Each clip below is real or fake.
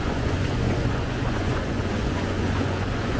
fake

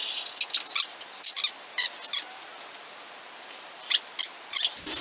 real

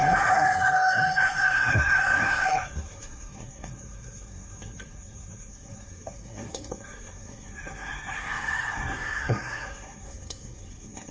fake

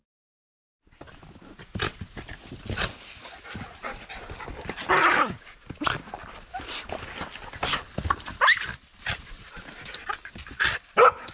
real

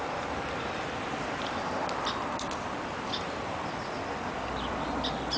fake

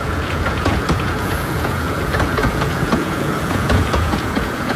fake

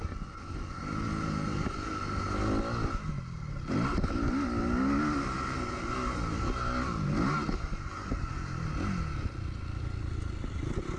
real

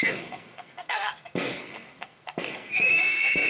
fake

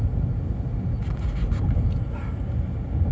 real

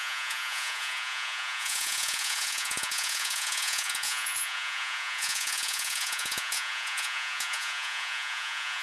fake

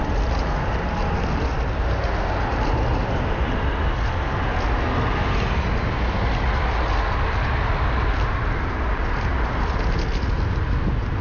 real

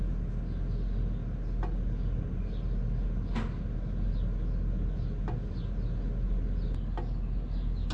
real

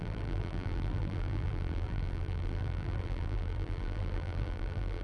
fake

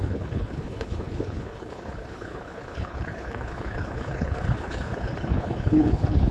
fake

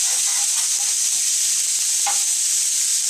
real